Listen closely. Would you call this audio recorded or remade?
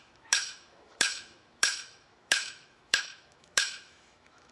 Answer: remade